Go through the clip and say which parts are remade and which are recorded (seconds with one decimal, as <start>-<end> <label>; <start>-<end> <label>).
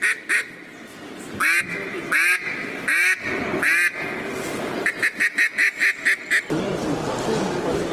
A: 0.0-7.9 recorded